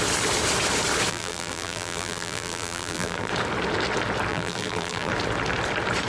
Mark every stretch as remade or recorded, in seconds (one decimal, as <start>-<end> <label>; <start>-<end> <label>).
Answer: 0.0-1.1 recorded; 1.1-3.3 remade; 3.3-4.3 recorded; 4.3-5.1 remade; 5.1-6.1 recorded

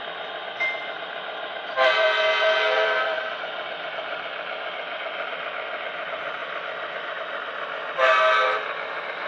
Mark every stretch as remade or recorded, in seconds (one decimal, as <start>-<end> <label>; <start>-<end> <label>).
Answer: 0.0-0.8 recorded; 0.8-5.3 remade; 5.3-6.4 recorded; 6.4-7.2 remade; 7.2-9.3 recorded

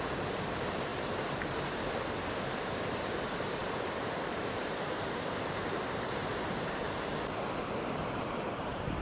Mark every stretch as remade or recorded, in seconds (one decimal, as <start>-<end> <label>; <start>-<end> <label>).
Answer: 0.0-3.6 remade; 3.6-4.4 recorded; 4.4-6.3 remade; 6.3-8.2 recorded; 8.2-9.0 remade

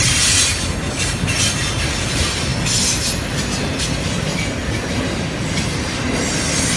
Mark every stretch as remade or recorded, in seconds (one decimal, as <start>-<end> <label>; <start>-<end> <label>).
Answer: 0.0-6.8 recorded